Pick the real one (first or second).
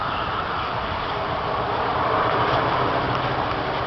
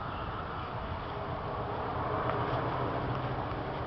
second